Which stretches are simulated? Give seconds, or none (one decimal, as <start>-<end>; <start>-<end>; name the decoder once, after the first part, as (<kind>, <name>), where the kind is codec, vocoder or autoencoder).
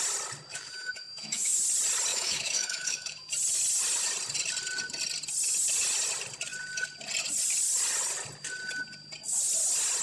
0.5-1.6 (autoencoder, DAC-VAE); 2.1-3.3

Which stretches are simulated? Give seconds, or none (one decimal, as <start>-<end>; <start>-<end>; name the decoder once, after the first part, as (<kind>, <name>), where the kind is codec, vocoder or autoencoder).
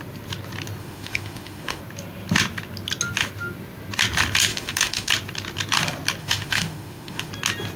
0.8-1.8 (autoencoder, DAC-VAE); 4.5-5.1; 6.2-7.3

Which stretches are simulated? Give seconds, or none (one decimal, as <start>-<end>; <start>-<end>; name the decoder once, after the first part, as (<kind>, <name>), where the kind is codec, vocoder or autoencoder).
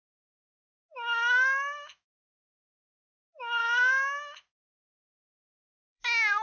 0.0-3.6 (autoencoder, DAC-VAE); 5.9-6.4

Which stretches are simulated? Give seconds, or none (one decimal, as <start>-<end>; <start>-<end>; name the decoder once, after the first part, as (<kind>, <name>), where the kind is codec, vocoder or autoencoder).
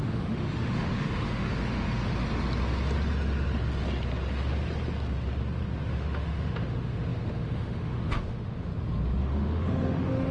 0.0-2.1 (autoencoder, DAC-VAE); 5.9-8.7; 9.2-10.3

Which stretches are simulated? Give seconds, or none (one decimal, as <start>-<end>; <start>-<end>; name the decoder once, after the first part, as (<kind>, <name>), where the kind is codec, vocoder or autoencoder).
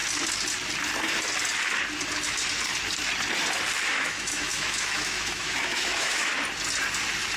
3.9-6.3 (autoencoder, DAC-VAE)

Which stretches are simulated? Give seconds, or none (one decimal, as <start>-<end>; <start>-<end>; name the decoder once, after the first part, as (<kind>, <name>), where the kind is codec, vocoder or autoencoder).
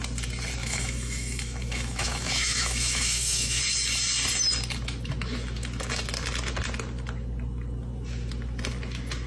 0.6-3.6 (autoencoder, DAC-VAE)